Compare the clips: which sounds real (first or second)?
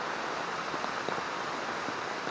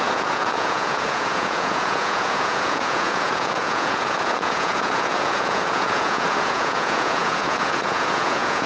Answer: first